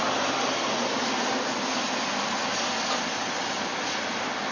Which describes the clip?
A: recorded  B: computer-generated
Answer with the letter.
A